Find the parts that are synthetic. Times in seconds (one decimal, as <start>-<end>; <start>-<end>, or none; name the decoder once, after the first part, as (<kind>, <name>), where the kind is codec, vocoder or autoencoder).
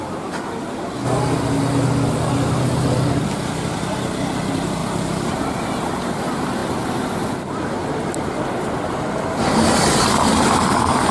4.8-5.5 (vocoder, BigVGAN v2); 6.6-8.8